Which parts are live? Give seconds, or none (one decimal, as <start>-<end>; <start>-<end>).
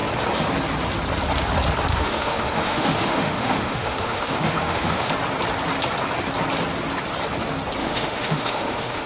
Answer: 0.0-1.9; 5.1-7.8